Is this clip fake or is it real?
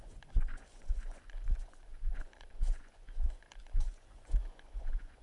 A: fake